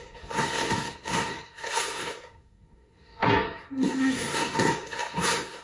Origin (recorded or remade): remade